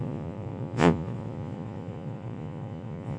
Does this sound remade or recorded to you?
remade